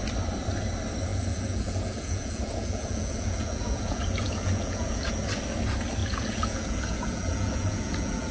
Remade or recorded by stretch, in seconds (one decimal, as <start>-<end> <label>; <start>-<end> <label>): 0.0-1.1 recorded; 1.1-5.1 remade; 5.1-6.0 recorded; 6.0-8.3 remade